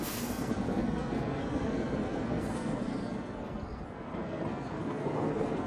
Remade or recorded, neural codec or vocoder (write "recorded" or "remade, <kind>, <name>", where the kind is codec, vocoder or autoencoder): remade, codec, SNAC